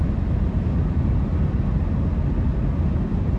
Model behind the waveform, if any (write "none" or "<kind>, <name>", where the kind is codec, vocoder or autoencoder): none